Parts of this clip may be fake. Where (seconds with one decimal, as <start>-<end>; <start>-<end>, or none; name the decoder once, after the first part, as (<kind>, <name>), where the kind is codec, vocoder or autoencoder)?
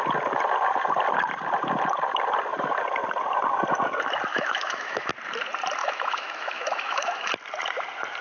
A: 4.3-5.1 (autoencoder, DAC-VAE); 5.8-7.3